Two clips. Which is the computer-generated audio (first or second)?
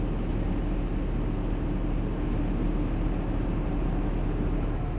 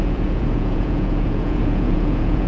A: second